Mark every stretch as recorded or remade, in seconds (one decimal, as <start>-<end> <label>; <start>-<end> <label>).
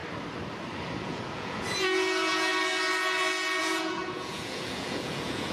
0.0-1.0 recorded; 1.0-2.5 remade; 2.5-3.6 recorded; 3.6-5.5 remade